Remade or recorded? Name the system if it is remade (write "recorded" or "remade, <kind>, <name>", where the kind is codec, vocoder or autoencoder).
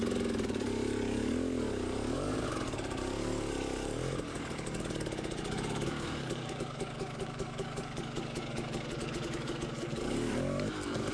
remade, codec, DAC